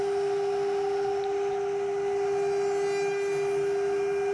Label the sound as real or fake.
real